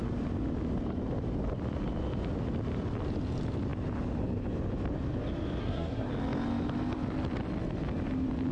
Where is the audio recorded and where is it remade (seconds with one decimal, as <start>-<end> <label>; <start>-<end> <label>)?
0.0-5.6 recorded; 5.6-6.1 remade; 6.1-8.5 recorded